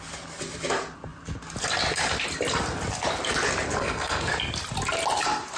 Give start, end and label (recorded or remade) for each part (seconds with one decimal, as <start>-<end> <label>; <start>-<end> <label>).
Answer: 0.0-3.8 recorded; 3.8-4.3 remade; 4.3-5.6 recorded